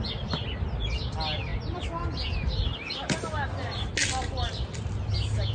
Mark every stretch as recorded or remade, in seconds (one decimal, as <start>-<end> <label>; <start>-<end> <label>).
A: 0.0-5.5 recorded